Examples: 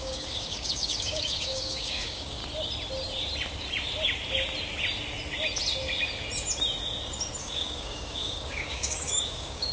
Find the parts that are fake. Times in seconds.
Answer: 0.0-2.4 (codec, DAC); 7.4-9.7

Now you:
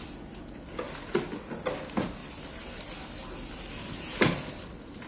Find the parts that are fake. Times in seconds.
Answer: none

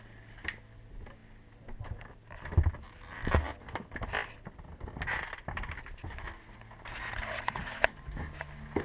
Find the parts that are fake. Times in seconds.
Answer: none

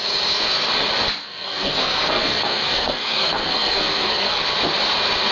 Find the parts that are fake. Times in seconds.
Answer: 1.2-4.4 (codec, SNAC)

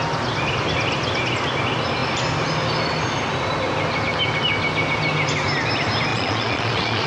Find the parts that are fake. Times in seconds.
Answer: 6.1-7.1 (vocoder, Vocos)